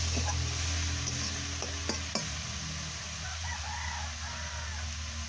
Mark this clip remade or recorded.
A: recorded